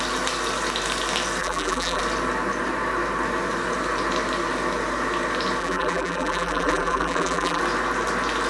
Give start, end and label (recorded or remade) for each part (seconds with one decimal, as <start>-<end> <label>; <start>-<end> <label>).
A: 0.0-1.4 recorded; 1.4-2.0 remade; 2.0-5.6 recorded; 5.6-7.6 remade; 7.6-8.5 recorded